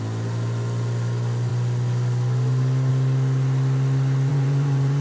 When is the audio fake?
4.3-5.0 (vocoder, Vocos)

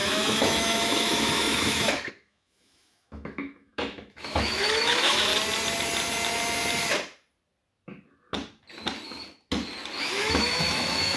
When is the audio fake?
0.0-5.3 (autoencoder, DAC-VAE); 10.0-11.2

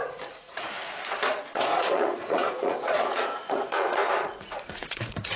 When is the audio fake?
0.0-5.4 (vocoder, Vocos)

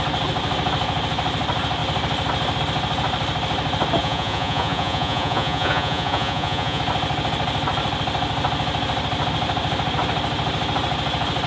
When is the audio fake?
4.0-6.8 (vocoder, Vocos)

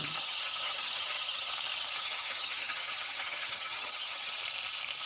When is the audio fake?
0.0-1.5 (vocoder, HiFi-GAN); 2.0-4.4